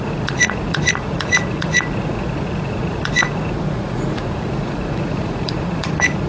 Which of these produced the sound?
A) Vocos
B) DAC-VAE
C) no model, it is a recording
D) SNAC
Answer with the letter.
A